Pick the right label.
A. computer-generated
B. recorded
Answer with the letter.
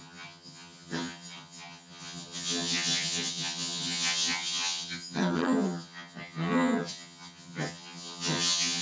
A